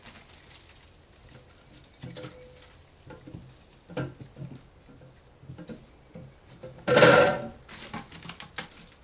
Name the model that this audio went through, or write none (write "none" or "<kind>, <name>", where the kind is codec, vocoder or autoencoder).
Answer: none